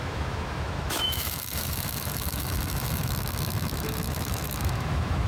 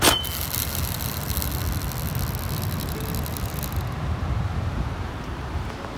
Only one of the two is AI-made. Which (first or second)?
first